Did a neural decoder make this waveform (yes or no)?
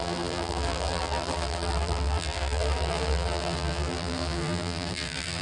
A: yes